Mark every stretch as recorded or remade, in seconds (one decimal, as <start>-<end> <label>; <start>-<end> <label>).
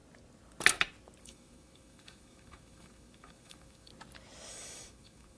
0.0-1.2 recorded; 1.2-3.9 remade; 3.9-4.5 recorded; 4.5-5.4 remade